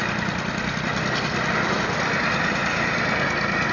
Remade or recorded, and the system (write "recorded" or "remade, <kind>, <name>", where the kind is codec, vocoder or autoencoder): recorded